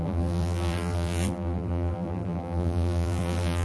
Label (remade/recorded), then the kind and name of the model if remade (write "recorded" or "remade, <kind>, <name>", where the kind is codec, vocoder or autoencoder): remade, vocoder, BigVGAN v2